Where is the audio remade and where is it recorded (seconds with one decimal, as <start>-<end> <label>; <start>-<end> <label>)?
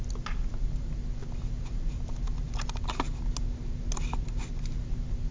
0.0-5.3 recorded